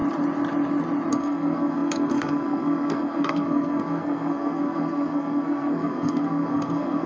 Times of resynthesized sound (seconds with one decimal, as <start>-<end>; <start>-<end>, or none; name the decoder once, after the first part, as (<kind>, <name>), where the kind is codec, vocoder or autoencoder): 1.1-7.1 (codec, SNAC)